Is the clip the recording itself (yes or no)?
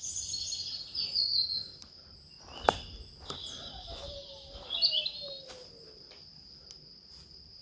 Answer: yes